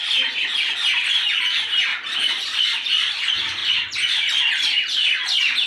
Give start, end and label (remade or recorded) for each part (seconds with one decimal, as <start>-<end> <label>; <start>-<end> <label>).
0.0-1.9 recorded; 1.9-3.2 remade; 3.2-3.6 recorded; 3.6-5.2 remade; 5.2-5.7 recorded